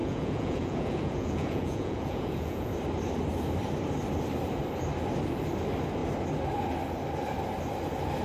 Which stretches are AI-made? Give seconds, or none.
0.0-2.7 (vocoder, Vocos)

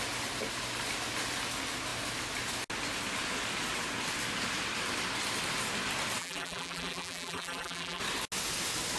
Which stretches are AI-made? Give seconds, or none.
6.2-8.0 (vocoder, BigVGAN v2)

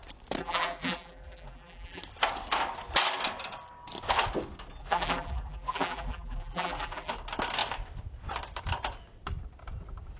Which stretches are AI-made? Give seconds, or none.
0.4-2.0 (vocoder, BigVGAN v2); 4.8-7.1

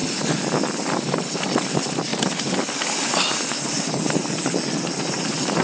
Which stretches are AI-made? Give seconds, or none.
1.7-2.1 (vocoder, BigVGAN v2)

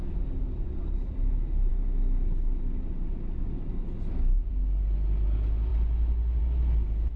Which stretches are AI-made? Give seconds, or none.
none

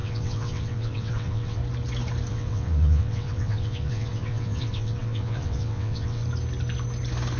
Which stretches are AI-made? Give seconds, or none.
0.0-1.6 (vocoder, WaveNeXt); 2.3-6.2

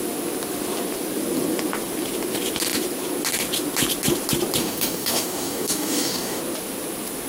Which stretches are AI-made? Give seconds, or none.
4.6-6.4 (codec, DAC)